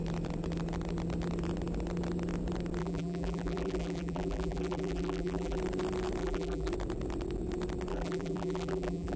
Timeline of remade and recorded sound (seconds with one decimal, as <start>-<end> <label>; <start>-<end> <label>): 0.0-2.8 recorded; 2.8-5.6 remade; 5.6-6.2 recorded; 6.2-6.7 remade; 6.7-7.9 recorded; 7.9-9.2 remade